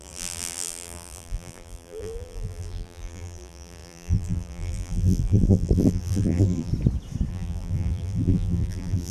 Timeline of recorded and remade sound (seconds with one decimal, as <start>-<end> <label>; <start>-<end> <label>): 0.0-6.7 remade; 6.7-7.3 recorded; 7.3-9.1 remade